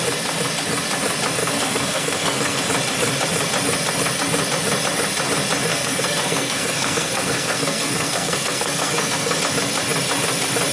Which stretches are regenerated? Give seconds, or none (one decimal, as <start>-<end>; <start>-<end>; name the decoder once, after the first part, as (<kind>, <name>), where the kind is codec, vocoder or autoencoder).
1.4-2.6 (codec, SNAC); 5.7-9.4